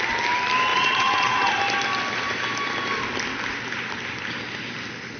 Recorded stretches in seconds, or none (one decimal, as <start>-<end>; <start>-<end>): 0.0-0.7; 1.6-5.2